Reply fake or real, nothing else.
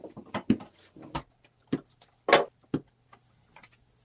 real